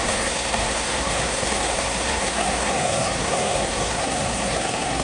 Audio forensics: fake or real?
fake